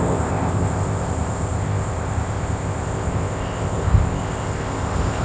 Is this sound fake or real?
fake